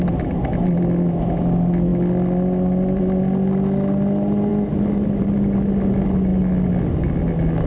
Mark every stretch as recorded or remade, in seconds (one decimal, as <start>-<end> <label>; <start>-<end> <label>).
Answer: 0.0-7.7 recorded